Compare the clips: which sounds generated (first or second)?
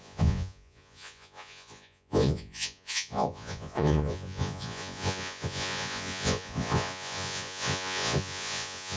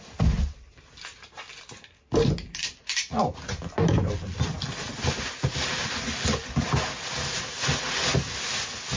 first